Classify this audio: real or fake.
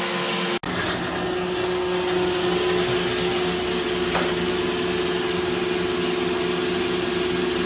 real